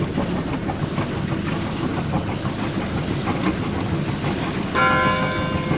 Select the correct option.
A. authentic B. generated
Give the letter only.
A